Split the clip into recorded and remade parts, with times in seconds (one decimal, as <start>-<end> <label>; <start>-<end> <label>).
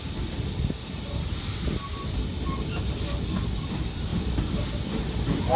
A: 0.0-5.6 recorded